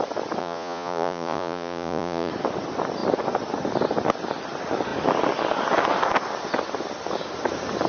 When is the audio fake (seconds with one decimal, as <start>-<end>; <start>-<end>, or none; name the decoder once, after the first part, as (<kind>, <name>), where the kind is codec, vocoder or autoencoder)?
0.4-2.3 (vocoder, Vocos)